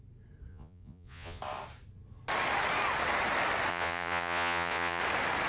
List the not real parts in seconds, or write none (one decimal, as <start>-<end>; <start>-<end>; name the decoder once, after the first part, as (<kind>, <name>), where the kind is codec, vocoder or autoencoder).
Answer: 0.5-1.4 (vocoder, Vocos); 3.7-5.0